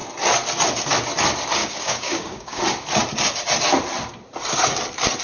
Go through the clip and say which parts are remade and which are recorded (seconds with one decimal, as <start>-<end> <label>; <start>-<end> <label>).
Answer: 0.0-1.6 recorded; 1.6-2.6 remade; 2.6-5.2 recorded